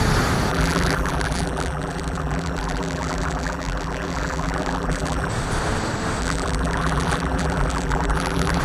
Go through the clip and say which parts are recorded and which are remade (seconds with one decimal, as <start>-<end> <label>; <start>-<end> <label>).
0.0-0.5 recorded; 0.5-5.3 remade; 5.3-6.2 recorded; 6.2-8.6 remade

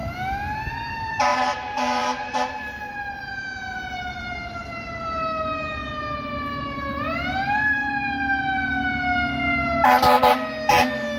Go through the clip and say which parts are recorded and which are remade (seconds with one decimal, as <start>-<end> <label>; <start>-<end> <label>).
0.0-0.7 recorded; 0.7-5.8 remade; 5.8-6.6 recorded; 6.6-7.8 remade; 7.8-11.2 recorded

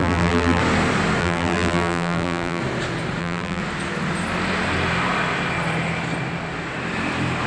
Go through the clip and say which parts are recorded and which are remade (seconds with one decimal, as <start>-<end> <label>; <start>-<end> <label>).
0.0-0.6 remade; 0.6-1.2 recorded; 1.2-2.6 remade; 2.6-3.2 recorded; 3.2-3.6 remade; 3.6-7.5 recorded

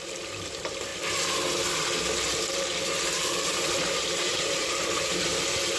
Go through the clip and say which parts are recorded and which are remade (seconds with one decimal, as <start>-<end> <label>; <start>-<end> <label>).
0.0-0.9 remade; 0.9-3.7 recorded; 3.7-5.8 remade

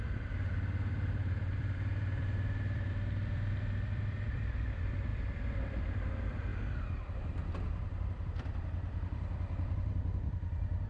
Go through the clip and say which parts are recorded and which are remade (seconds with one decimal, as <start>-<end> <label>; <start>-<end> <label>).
0.0-6.5 remade; 6.5-8.1 recorded; 8.1-10.9 remade